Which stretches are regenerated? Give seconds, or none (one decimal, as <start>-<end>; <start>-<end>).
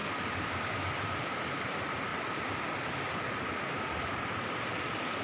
0.0-1.0